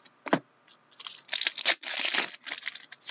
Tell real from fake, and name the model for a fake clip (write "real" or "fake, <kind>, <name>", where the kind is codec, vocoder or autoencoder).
real